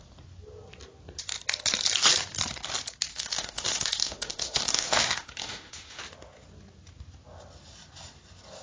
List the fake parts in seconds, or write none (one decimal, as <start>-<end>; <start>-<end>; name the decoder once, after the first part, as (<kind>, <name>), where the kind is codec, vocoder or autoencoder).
3.1-6.0 (autoencoder, DAC-VAE)